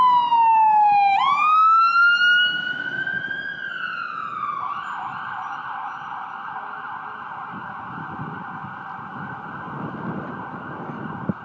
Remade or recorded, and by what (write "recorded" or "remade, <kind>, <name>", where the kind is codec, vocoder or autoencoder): recorded